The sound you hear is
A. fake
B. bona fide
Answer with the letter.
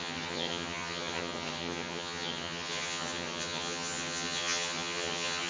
A